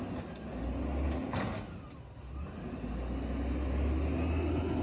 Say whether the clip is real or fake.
real